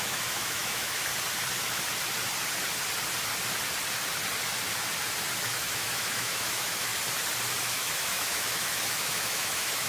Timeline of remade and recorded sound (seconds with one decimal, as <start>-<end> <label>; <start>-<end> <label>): 0.0-1.1 remade; 1.1-5.4 recorded; 5.4-6.9 remade; 6.9-7.6 recorded; 7.6-9.9 remade

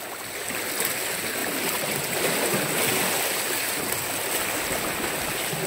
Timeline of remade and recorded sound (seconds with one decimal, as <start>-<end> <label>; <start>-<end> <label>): 0.0-5.7 recorded

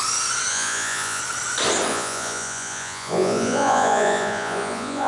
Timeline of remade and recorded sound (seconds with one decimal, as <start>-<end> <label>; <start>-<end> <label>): 0.0-0.5 recorded; 0.5-1.2 remade; 1.2-1.9 recorded; 1.9-5.1 remade

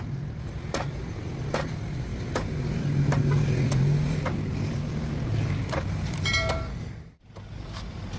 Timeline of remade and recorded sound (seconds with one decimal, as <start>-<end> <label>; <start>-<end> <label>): 0.0-6.7 recorded; 6.7-7.2 remade; 7.2-8.2 recorded

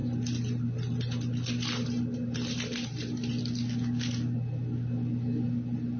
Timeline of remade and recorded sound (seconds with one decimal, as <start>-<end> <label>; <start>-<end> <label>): 0.0-6.0 recorded

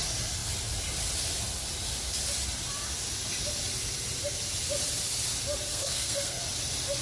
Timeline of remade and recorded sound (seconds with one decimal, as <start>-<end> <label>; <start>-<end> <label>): 0.0-5.7 recorded; 5.7-6.4 remade; 6.4-7.0 recorded